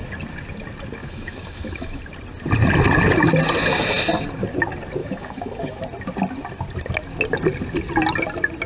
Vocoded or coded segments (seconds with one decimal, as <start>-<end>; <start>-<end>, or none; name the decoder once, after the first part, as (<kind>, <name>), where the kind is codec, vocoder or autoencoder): 1.0-2.0 (autoencoder, DAC-VAE); 5.0-5.8